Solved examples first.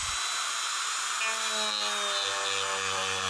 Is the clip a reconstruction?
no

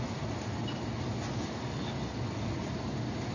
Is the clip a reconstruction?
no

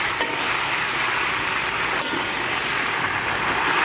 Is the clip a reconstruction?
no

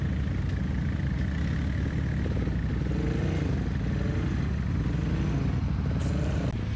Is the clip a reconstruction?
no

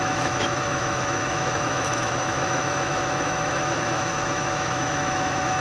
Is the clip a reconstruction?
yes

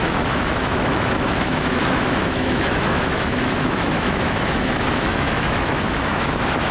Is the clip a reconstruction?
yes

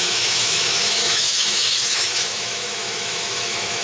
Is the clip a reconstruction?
yes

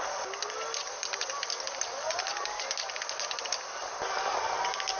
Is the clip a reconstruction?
no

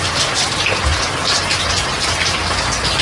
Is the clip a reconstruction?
no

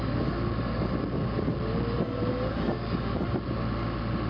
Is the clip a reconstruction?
no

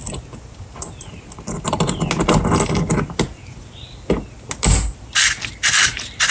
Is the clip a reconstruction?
no